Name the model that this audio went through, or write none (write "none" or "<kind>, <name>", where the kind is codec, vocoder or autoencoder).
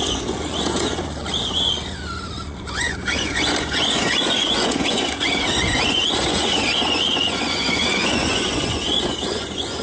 vocoder, Vocos